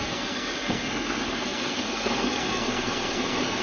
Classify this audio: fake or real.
fake